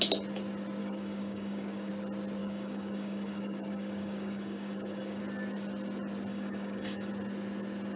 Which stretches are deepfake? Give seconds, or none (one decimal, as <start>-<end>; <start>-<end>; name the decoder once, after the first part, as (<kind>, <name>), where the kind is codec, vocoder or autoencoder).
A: 0.8-1.9 (codec, DAC); 2.4-5.2; 6.3-7.1